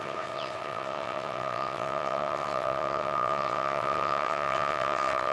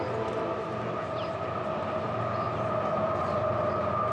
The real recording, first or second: second